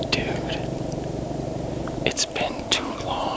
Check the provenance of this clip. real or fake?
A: fake